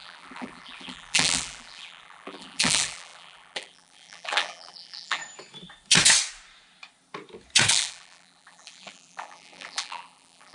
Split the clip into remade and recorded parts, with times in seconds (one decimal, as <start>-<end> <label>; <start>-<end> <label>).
0.0-5.2 remade; 5.2-7.7 recorded; 7.7-10.5 remade